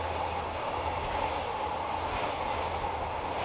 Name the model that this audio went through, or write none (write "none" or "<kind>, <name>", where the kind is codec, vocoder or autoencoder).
none